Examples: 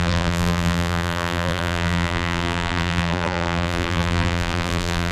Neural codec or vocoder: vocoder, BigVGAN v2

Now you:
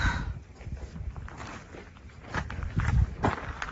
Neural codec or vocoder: vocoder, BigVGAN v2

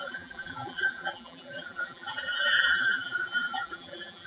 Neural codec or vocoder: vocoder, BigVGAN v2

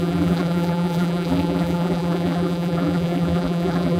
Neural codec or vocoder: vocoder, BigVGAN v2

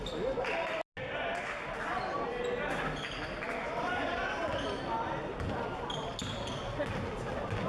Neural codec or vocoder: none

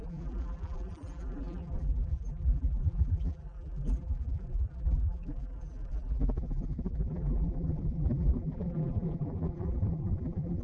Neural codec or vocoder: vocoder, BigVGAN v2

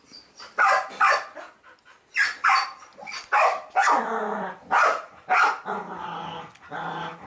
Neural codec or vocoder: vocoder, BigVGAN v2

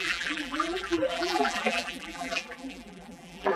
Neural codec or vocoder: vocoder, BigVGAN v2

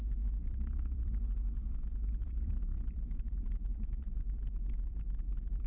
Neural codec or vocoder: vocoder, BigVGAN v2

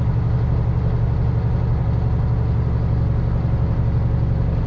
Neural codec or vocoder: none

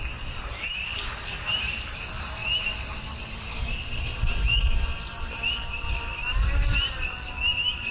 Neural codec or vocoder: vocoder, BigVGAN v2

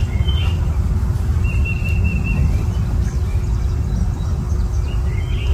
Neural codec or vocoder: none